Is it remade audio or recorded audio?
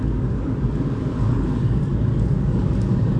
remade